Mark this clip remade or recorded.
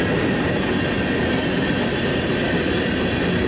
recorded